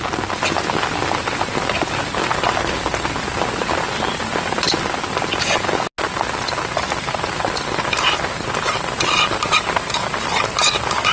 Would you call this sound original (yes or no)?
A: yes